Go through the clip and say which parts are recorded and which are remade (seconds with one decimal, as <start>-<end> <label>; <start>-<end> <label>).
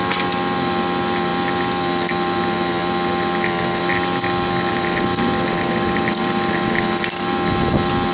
0.0-8.1 recorded